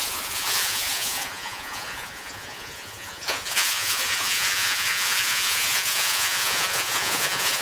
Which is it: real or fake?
fake